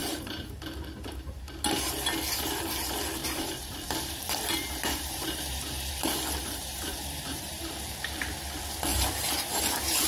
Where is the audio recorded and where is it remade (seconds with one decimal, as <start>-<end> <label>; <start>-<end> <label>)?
0.0-0.6 remade; 0.6-3.2 recorded; 3.2-5.9 remade; 5.9-6.4 recorded; 6.4-7.7 remade; 7.7-8.9 recorded; 8.9-9.6 remade; 9.6-10.1 recorded